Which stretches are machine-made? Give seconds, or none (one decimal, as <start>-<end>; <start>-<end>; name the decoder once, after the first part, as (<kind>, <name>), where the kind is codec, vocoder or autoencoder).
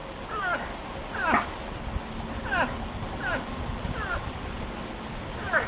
none